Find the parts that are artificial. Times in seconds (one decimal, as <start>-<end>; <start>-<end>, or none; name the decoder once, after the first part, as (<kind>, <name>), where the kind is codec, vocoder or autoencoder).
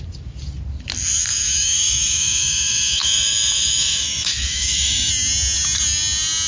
1.3-5.1 (autoencoder, DAC-VAE)